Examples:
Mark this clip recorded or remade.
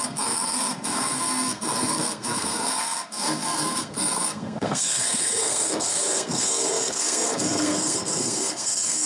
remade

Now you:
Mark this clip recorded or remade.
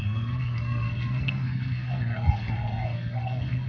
remade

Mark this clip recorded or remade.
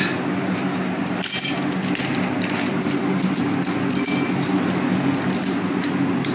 recorded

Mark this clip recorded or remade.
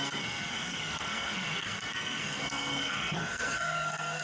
remade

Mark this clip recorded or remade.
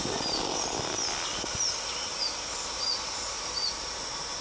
recorded